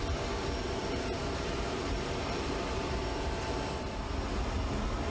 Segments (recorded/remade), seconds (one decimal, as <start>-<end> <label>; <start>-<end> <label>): 0.0-0.8 recorded; 0.8-3.9 remade; 3.9-5.1 recorded